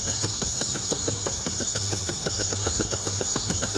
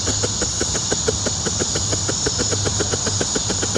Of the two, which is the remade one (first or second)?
first